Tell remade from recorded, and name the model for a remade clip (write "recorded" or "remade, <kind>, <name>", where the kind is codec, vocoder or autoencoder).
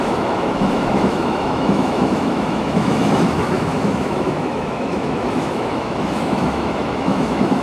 remade, autoencoder, DAC-VAE